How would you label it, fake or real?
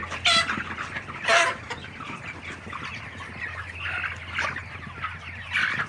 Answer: real